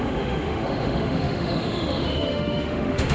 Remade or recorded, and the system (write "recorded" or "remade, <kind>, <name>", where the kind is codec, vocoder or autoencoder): remade, autoencoder, DAC-VAE